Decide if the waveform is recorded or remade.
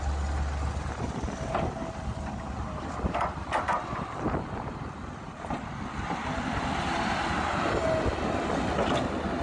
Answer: recorded